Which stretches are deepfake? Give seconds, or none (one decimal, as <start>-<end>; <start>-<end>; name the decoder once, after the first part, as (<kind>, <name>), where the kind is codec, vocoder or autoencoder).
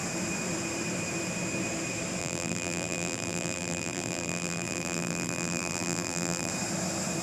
2.2-6.5 (vocoder, BigVGAN v2)